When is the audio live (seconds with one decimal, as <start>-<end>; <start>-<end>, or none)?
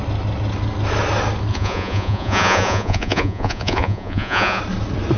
0.0-1.5; 4.6-5.2